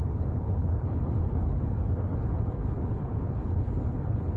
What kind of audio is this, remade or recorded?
remade